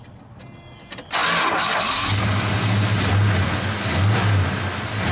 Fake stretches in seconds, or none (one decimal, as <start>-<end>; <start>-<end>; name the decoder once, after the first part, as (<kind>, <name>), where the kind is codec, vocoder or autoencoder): none